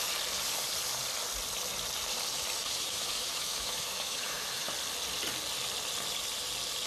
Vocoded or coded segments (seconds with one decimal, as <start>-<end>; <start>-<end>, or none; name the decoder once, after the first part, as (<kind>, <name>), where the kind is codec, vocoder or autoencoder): 2.6-4.7 (autoencoder, DAC-VAE)